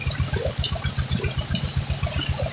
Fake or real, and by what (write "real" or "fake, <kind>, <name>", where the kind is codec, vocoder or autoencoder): real